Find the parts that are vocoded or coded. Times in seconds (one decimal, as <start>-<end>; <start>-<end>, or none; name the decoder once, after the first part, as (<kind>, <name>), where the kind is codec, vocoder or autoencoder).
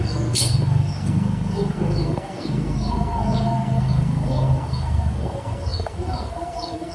0.0-6.9 (codec, SNAC)